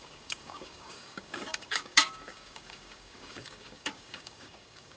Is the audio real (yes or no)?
no